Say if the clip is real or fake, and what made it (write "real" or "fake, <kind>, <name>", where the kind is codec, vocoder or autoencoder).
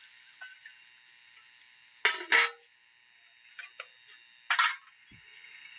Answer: real